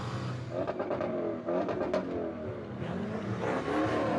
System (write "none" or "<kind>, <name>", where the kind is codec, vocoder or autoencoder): none